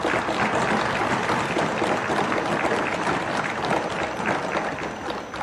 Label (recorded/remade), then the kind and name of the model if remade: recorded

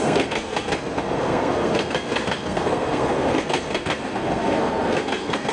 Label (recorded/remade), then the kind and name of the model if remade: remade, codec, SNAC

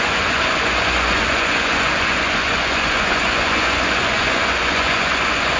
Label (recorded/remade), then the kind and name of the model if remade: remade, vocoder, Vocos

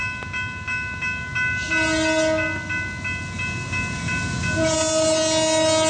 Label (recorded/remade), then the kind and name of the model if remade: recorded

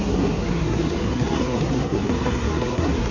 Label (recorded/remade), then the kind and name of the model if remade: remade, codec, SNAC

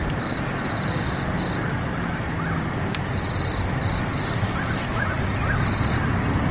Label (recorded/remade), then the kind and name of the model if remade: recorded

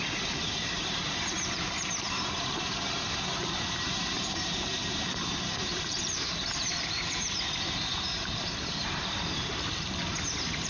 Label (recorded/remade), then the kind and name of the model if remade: remade, vocoder, BigVGAN v2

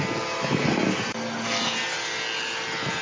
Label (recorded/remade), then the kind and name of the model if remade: recorded